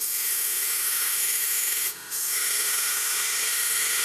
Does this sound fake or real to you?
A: fake